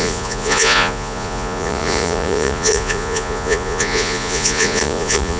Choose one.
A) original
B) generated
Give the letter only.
B